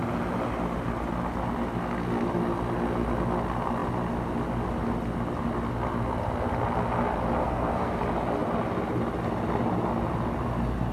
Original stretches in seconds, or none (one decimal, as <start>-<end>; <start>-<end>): 0.0-7.4; 8.0-10.9